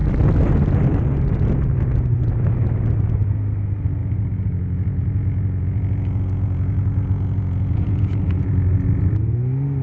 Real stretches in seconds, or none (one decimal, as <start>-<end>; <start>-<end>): 0.0-4.0; 8.5-9.8